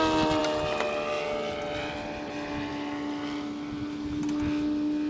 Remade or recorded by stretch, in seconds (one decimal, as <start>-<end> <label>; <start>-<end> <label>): 0.0-5.1 recorded